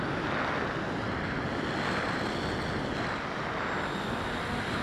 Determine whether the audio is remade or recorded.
recorded